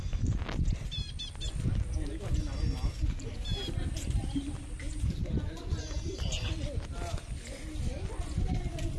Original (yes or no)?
yes